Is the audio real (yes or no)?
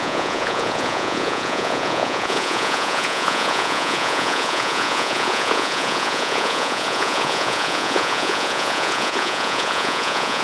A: no